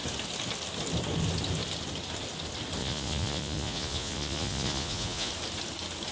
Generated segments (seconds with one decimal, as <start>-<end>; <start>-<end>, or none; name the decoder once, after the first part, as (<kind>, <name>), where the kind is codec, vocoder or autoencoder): 2.8-5.3 (vocoder, Vocos)